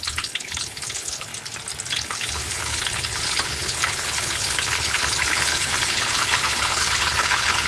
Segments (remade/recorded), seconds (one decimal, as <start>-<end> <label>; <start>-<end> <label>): 0.0-1.3 remade; 1.3-1.9 recorded; 1.9-7.7 remade